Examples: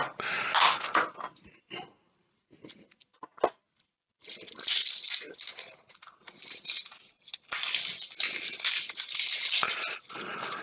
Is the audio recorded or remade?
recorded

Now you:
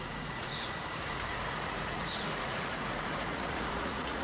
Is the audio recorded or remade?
remade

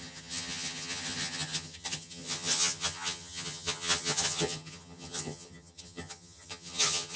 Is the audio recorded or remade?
remade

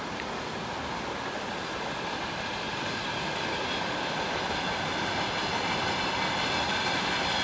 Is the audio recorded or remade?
recorded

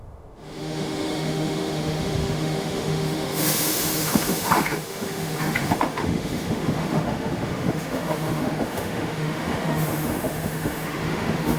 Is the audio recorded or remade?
remade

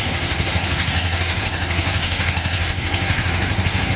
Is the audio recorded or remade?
remade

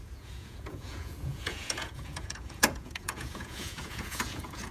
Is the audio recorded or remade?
remade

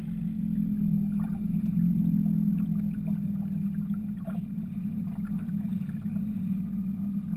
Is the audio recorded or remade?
recorded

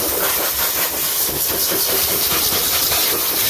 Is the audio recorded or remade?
recorded